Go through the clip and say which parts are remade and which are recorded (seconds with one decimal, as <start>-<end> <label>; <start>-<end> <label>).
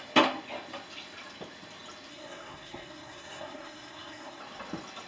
0.0-2.1 recorded; 2.1-4.4 remade; 4.4-5.1 recorded